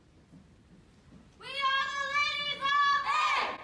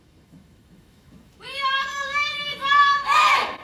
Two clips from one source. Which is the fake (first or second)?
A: second